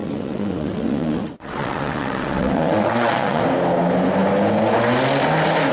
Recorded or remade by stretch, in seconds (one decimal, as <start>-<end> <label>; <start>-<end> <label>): 0.0-3.4 remade; 3.4-5.7 recorded